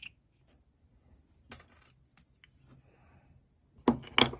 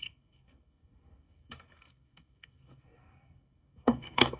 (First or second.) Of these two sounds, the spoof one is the second